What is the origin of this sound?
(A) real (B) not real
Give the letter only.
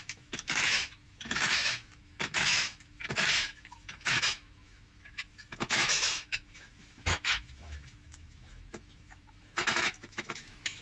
B